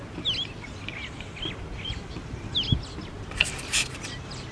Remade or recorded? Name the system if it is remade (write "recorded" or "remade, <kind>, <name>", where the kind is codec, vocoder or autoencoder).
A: recorded